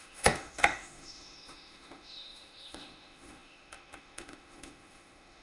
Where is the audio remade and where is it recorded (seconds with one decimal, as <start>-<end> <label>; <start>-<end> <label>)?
0.0-5.4 remade